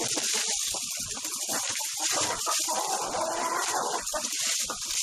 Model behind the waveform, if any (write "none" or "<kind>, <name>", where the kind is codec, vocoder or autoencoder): none